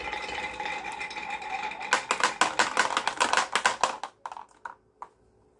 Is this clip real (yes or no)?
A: yes